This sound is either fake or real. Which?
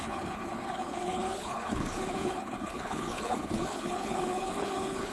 fake